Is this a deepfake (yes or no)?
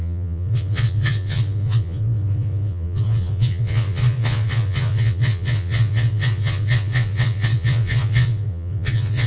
yes